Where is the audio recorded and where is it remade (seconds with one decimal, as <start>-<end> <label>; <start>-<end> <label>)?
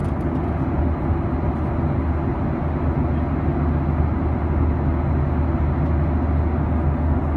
0.0-7.4 recorded